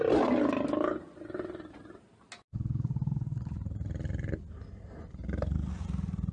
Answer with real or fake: real